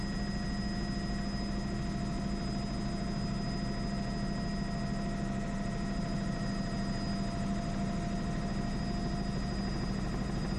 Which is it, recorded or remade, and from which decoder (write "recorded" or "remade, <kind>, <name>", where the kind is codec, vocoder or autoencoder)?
recorded